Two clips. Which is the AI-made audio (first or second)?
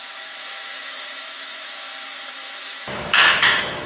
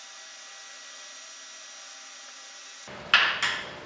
first